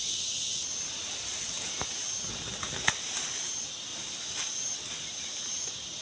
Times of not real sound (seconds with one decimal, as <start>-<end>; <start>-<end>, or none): none